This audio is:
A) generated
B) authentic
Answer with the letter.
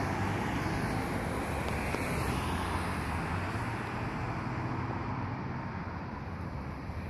B